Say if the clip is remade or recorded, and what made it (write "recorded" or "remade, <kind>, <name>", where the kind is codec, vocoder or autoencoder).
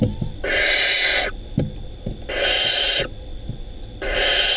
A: recorded